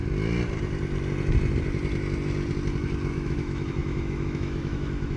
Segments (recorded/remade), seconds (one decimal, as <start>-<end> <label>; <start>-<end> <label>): 0.0-3.1 recorded; 3.1-5.2 remade